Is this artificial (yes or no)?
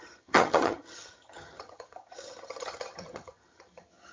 yes